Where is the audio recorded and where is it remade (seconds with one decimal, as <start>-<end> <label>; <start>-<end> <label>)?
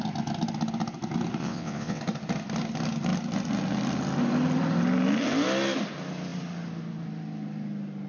0.0-1.4 recorded; 1.4-2.0 remade; 2.0-8.1 recorded